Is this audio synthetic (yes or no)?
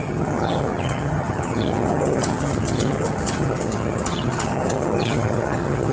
yes